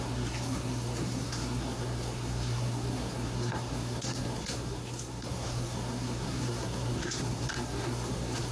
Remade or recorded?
remade